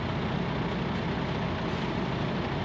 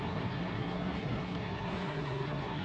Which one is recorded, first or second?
first